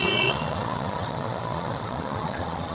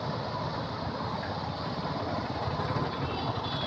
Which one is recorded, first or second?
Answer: second